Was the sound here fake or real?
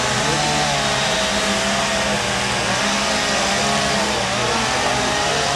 real